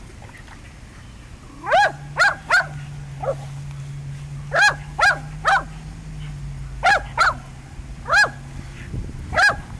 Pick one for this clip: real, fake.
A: real